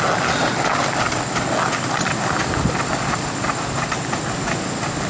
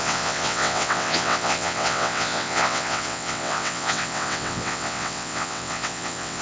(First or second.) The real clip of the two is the first